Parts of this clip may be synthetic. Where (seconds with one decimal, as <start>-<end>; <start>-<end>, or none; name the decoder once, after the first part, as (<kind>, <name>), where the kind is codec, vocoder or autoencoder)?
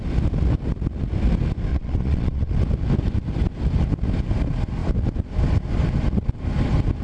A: 1.7-2.5 (vocoder, Vocos)